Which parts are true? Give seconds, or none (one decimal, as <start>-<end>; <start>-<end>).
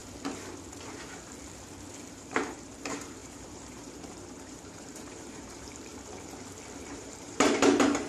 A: 0.0-2.1; 5.9-6.9